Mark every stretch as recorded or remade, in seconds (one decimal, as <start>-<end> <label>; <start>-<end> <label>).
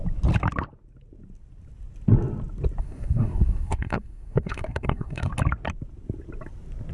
0.0-2.8 recorded; 2.8-5.3 remade; 5.3-6.9 recorded